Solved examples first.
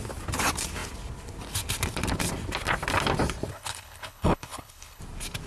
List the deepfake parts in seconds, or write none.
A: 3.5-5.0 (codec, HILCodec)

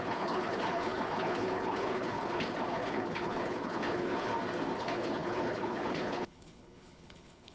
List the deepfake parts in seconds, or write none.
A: 0.0-4.3 (codec, HILCodec); 4.8-7.5

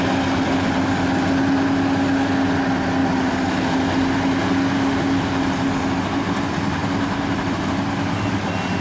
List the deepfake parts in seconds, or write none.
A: none